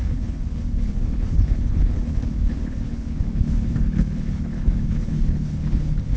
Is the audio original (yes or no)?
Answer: no